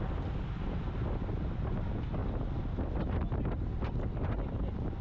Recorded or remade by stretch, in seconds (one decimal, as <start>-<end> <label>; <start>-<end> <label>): 0.0-5.0 recorded